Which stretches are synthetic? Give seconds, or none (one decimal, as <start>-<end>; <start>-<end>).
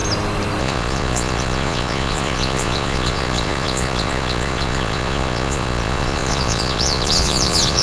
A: 0.6-7.8